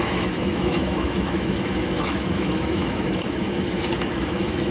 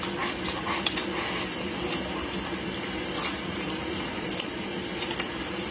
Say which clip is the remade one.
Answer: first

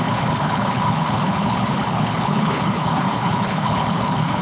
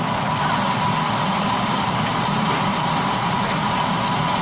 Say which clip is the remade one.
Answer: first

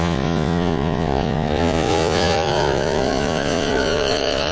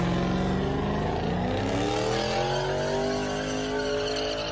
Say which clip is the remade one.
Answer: first